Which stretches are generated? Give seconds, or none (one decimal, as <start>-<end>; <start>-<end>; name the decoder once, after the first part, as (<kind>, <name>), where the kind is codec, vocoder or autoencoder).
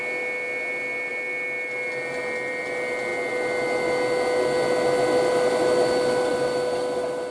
none